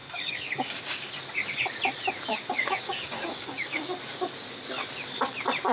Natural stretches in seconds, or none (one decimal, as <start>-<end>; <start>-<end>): 1.1-2.3; 4.5-5.7